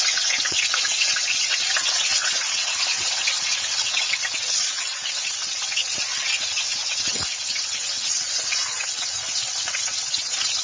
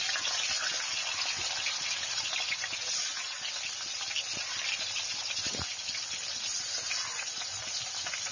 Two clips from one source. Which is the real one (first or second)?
second